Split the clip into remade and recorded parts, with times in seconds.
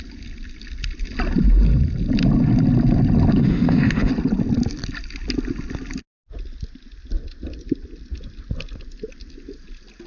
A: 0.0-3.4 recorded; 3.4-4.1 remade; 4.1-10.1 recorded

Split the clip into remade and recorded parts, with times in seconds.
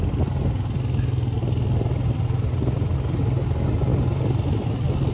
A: 0.0-5.1 recorded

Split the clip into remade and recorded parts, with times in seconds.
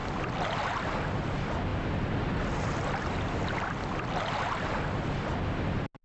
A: 0.0-6.0 recorded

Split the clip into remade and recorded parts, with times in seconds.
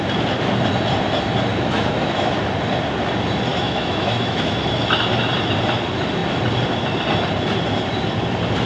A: 0.0-1.5 recorded; 1.5-2.3 remade; 2.3-3.5 recorded; 3.5-4.8 remade; 4.8-8.7 recorded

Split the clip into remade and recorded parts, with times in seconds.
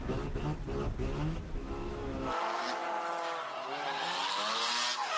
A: 0.0-1.0 recorded; 1.0-2.4 remade; 2.4-5.2 recorded